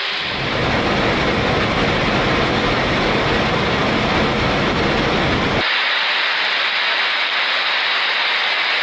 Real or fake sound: real